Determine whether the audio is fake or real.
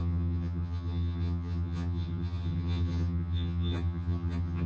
fake